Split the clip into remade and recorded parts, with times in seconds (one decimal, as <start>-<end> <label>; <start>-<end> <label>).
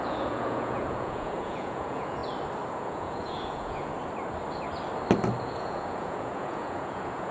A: 0.0-2.2 remade; 2.2-2.7 recorded; 2.7-3.9 remade; 3.9-5.4 recorded; 5.4-7.3 remade